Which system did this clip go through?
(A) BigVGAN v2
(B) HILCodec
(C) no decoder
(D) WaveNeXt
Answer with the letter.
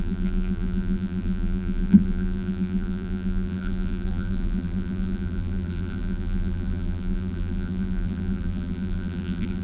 A